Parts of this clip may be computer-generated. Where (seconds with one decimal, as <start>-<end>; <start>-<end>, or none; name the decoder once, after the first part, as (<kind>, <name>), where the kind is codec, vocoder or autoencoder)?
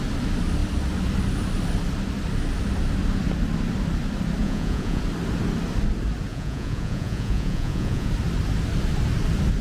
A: 4.4-5.0 (vocoder, Vocos); 6.3-8.1